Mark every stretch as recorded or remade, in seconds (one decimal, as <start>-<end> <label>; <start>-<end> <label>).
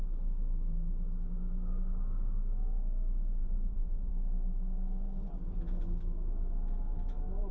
0.0-3.4 recorded; 3.4-4.1 remade; 4.1-7.5 recorded